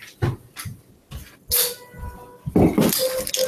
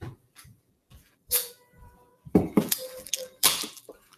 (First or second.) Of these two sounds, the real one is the first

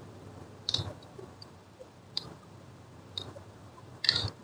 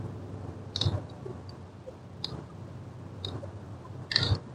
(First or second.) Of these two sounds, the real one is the second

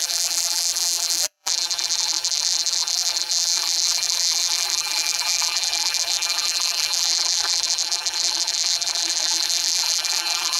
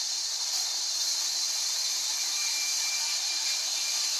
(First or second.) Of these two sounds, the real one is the second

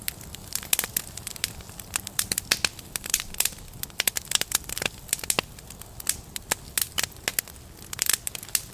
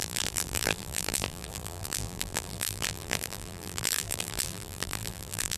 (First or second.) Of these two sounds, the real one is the first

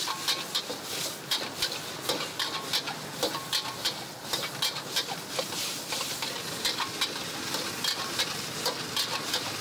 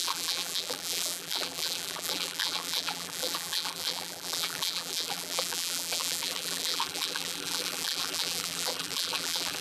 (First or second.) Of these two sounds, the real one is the first